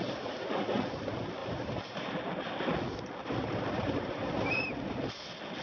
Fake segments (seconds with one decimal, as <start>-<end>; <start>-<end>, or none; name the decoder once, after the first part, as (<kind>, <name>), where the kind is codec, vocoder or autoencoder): 1.4-2.5 (vocoder, BigVGAN v2); 3.2-4.6